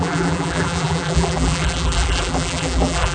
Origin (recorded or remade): remade